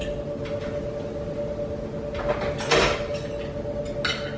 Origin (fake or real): real